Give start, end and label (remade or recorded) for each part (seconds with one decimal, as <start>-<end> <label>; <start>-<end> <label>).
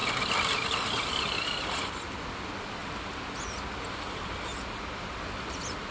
0.0-5.9 recorded